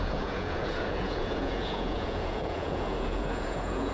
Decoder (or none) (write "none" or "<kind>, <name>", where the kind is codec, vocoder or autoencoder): vocoder, Vocos